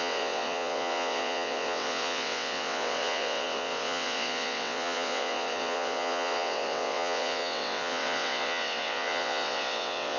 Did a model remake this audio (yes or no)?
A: yes